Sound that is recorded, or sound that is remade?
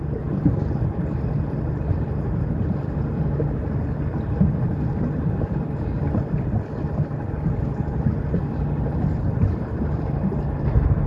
recorded